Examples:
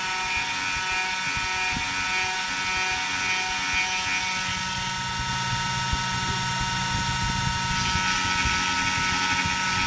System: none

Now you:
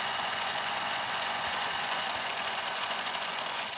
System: vocoder, Vocos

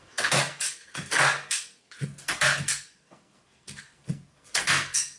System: codec, SNAC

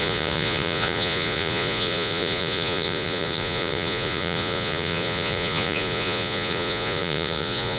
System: vocoder, Vocos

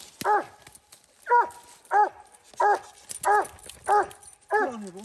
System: none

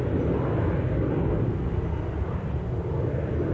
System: none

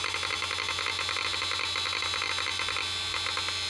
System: none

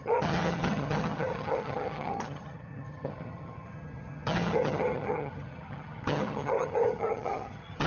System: vocoder, HiFi-GAN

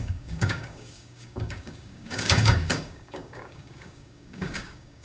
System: codec, DAC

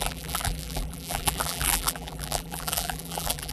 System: vocoder, BigVGAN v2